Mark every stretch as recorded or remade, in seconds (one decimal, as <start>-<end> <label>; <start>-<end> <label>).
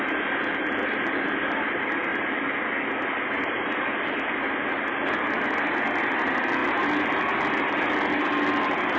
0.0-9.0 recorded